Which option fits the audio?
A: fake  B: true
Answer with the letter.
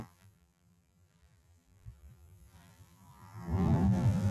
A